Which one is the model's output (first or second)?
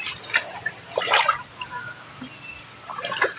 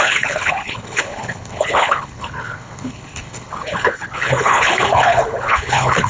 second